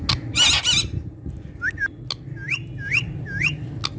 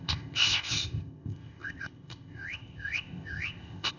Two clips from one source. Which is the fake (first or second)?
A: second